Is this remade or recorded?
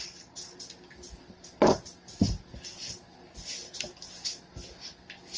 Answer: recorded